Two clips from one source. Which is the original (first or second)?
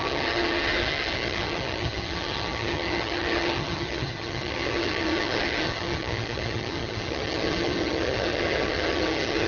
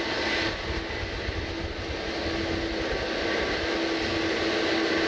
second